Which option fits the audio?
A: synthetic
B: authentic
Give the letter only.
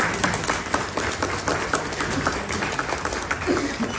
B